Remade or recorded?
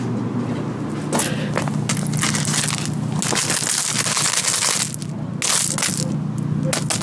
recorded